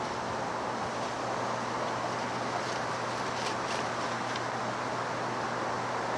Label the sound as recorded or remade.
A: recorded